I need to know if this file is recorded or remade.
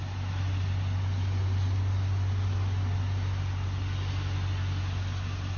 recorded